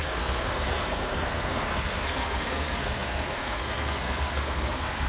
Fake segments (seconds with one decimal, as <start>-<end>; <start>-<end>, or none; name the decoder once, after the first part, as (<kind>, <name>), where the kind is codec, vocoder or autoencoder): 0.0-5.1 (codec, SNAC)